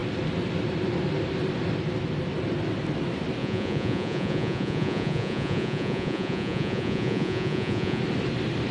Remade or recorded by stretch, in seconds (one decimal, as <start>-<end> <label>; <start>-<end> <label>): 0.0-3.4 recorded; 3.4-8.0 remade; 8.0-8.7 recorded